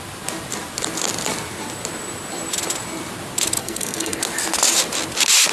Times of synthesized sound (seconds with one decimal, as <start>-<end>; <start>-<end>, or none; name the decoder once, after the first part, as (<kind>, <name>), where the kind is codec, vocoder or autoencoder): 3.6-4.2 (codec, SNAC)